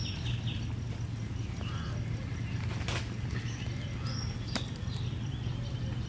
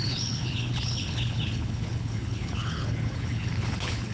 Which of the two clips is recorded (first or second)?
first